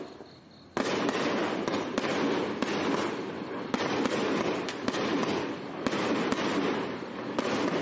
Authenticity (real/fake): real